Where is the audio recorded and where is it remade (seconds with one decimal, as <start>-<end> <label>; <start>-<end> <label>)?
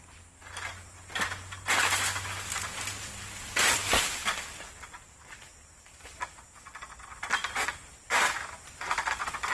0.0-9.5 recorded